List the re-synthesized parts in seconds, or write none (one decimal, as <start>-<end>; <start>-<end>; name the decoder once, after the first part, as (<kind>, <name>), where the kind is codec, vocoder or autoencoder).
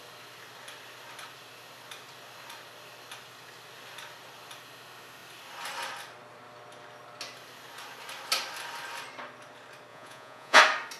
9.9-10.6 (vocoder, Vocos)